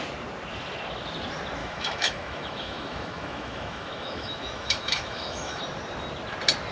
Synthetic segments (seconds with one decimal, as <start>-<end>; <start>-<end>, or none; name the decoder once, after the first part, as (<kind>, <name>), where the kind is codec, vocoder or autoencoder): 1.6-5.6 (autoencoder, DAC-VAE)